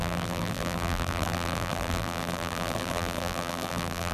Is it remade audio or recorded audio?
remade